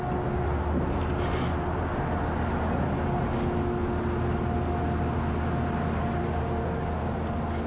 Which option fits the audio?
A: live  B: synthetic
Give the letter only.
A